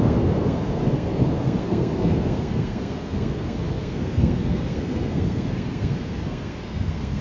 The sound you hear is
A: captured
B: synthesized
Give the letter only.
B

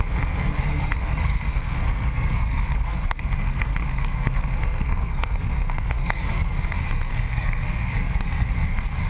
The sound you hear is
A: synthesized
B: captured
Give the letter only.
A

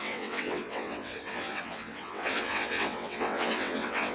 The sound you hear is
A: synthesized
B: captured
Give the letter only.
A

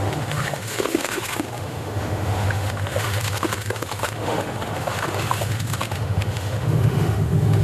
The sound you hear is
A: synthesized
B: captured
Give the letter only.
A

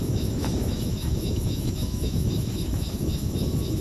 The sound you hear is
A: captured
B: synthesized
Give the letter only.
B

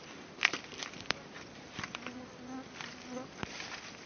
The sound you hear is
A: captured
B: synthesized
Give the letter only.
B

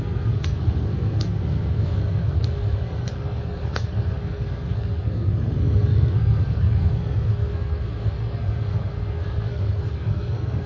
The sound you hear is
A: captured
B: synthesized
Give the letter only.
B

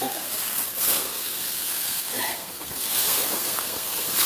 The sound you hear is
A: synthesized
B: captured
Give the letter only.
A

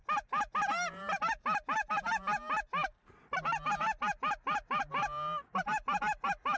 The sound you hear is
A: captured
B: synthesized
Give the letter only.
A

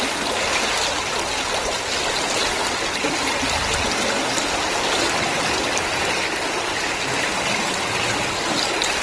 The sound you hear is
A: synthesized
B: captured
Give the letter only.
B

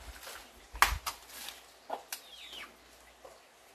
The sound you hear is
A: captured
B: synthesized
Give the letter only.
A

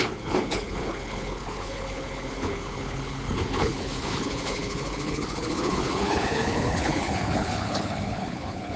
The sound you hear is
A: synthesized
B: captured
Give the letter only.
A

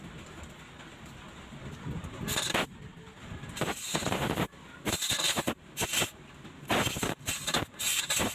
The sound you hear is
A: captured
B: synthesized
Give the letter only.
A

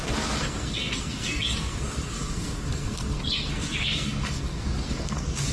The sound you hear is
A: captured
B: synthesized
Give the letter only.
B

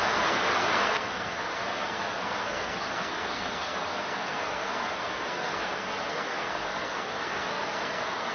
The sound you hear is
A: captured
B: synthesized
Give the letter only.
B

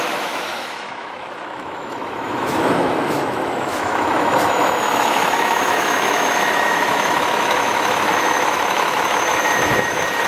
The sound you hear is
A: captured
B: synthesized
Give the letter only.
B